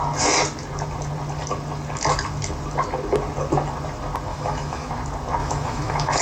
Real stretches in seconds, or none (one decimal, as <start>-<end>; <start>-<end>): 0.0-4.3; 4.9-5.4